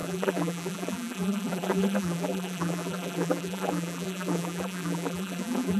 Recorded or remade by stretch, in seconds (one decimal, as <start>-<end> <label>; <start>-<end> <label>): 0.0-5.8 remade